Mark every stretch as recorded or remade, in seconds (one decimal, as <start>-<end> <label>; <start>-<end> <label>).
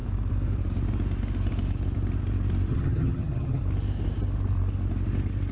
0.0-2.7 recorded; 2.7-3.6 remade; 3.6-5.5 recorded